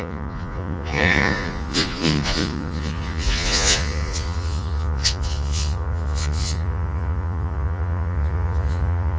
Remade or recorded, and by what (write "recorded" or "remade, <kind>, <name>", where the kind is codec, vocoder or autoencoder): remade, vocoder, Vocos